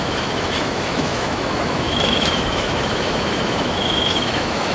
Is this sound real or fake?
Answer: fake